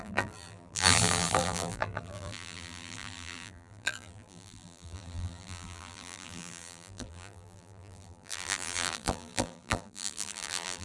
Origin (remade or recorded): remade